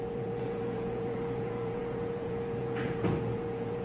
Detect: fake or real fake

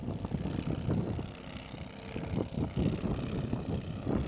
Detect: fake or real real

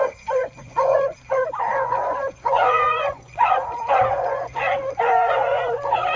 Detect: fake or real fake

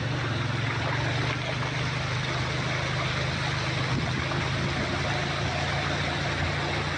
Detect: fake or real real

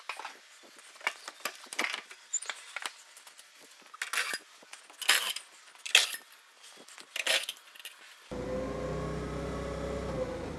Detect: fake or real real